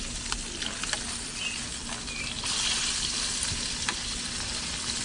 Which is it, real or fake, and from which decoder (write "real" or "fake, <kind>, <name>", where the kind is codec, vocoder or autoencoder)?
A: real